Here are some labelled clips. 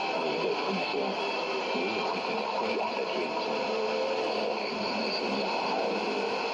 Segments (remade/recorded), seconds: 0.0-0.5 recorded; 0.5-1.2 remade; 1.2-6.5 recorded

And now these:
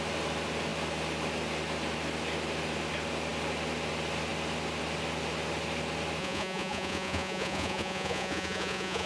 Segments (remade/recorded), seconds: 0.0-6.2 recorded; 6.2-9.1 remade